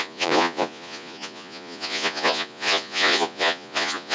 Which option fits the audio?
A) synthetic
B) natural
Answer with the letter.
A